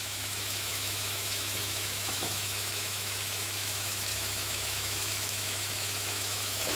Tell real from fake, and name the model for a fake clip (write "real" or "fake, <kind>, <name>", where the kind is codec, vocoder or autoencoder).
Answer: fake, autoencoder, DAC-VAE